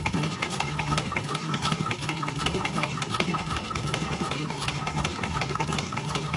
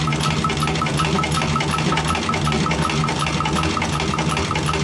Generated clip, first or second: first